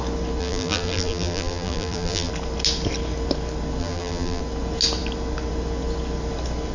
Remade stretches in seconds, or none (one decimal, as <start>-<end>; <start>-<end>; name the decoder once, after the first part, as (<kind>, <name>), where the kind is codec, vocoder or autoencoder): 0.4-2.3 (vocoder, BigVGAN v2); 3.8-4.4

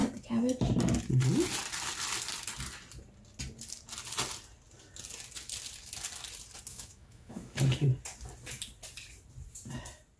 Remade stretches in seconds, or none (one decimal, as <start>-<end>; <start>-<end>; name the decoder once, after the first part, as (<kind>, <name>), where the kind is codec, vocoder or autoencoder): 6.7-7.6 (autoencoder, DAC-VAE)

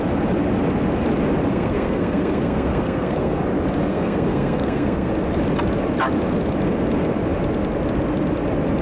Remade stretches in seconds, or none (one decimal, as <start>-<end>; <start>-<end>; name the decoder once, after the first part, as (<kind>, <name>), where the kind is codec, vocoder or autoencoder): 1.5-3.4 (codec, SNAC); 3.9-5.1